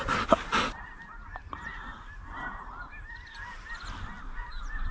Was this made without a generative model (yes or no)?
yes